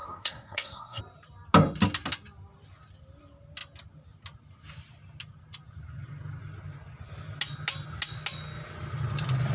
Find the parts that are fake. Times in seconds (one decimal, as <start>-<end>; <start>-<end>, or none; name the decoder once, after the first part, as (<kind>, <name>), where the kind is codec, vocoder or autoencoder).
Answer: 0.0-1.0 (codec, SNAC)